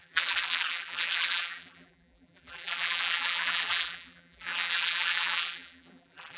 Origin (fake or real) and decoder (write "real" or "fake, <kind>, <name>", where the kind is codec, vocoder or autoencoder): fake, vocoder, BigVGAN v2